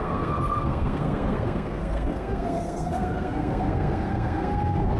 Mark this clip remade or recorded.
remade